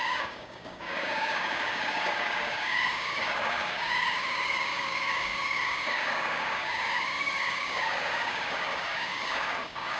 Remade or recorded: remade